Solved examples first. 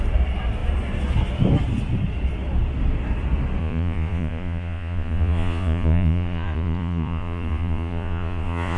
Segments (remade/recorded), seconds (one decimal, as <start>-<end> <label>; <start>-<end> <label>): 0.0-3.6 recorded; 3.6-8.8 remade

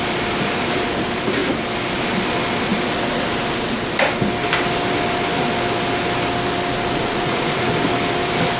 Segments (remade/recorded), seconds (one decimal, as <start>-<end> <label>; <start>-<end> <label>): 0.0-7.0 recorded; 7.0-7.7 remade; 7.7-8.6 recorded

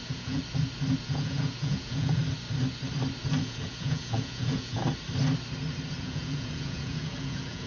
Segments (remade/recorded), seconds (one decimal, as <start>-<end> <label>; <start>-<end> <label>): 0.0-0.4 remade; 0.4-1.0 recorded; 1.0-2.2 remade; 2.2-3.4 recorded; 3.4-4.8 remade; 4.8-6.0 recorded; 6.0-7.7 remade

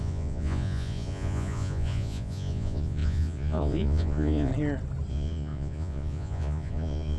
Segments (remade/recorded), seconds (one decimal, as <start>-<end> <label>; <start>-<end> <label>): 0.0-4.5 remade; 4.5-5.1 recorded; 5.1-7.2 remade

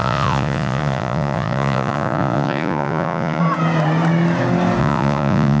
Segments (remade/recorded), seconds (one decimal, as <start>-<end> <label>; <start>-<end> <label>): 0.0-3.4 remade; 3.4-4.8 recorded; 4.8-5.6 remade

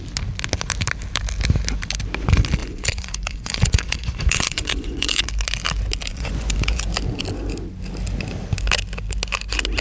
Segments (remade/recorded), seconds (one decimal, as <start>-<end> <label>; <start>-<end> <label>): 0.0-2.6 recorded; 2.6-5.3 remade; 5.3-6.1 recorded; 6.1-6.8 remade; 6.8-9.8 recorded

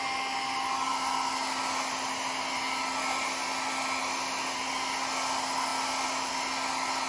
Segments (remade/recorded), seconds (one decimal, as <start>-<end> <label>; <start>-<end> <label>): 0.0-7.1 recorded